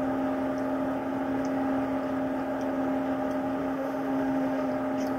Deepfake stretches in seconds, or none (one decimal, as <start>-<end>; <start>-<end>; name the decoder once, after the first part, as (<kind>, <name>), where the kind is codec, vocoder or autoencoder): 3.6-4.7 (autoencoder, DAC-VAE)